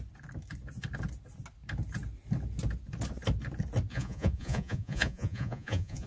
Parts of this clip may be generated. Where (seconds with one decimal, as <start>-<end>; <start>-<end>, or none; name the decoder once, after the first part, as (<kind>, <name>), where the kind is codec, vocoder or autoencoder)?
3.9-6.1 (vocoder, Vocos)